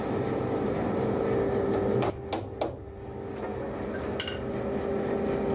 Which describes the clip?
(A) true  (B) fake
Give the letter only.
A